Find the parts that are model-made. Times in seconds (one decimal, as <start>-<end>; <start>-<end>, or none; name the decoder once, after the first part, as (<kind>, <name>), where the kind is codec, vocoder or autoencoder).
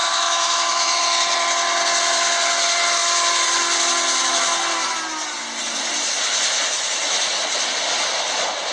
0.0-1.0 (autoencoder, DAC-VAE)